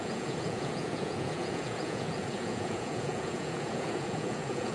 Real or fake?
fake